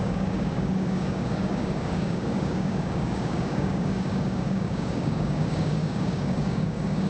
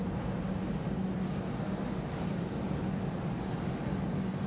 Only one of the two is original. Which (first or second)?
second